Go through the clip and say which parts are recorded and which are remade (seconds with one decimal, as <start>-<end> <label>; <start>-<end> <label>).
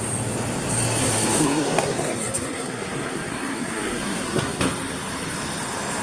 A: 0.0-1.0 recorded; 1.0-4.6 remade; 4.6-6.0 recorded